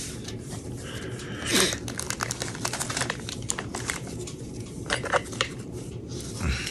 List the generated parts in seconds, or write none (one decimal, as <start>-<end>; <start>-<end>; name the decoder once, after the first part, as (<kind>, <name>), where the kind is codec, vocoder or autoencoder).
0.0-1.5 (vocoder, BigVGAN v2); 2.9-6.7